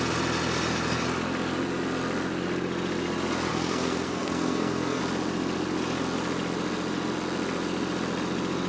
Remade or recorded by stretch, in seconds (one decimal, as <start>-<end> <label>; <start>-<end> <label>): 0.0-3.5 recorded; 3.5-5.0 remade; 5.0-8.7 recorded